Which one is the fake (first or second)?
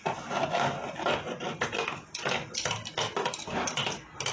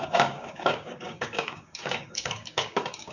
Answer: second